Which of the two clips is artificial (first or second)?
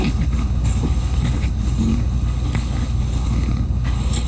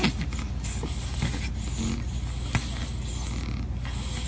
first